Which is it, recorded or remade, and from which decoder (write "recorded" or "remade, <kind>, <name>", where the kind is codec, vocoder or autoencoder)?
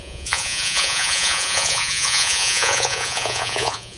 remade, vocoder, Vocos